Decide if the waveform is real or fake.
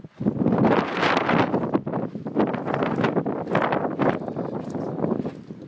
real